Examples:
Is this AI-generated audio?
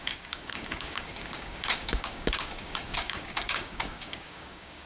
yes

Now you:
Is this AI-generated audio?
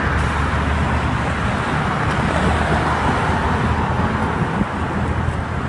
no